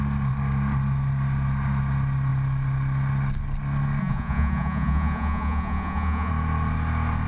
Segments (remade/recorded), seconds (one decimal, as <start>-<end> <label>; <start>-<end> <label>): 0.0-4.0 recorded; 4.0-6.3 remade; 6.3-7.3 recorded